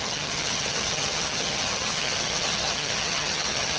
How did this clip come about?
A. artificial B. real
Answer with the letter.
A